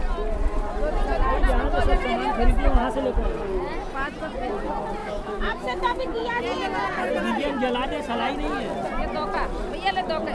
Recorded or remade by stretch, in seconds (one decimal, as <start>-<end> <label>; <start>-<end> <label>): 0.0-5.0 recorded; 5.0-6.4 remade; 6.4-10.3 recorded